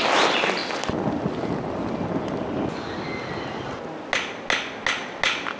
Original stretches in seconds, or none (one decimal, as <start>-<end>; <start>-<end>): 0.0-0.6; 2.6-5.6